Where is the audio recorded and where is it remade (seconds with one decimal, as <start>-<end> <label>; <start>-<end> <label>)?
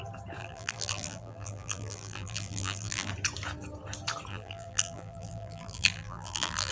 0.0-0.4 recorded; 0.4-3.1 remade; 3.1-4.3 recorded; 4.3-6.7 remade